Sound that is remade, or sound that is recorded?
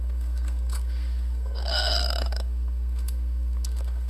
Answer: remade